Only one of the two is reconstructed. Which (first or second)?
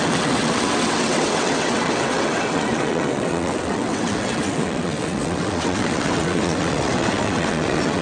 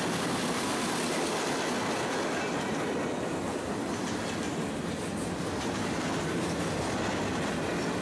first